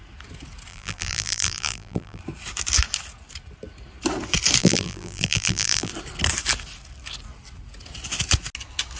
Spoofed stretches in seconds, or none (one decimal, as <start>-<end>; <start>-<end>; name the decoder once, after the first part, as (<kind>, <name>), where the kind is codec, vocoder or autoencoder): 0.7-2.2 (vocoder, BigVGAN v2); 4.6-5.9